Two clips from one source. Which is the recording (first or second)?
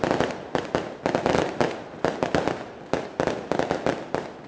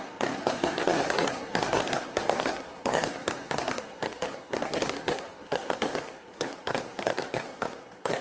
first